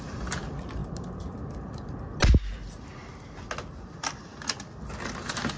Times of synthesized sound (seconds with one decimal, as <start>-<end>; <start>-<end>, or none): none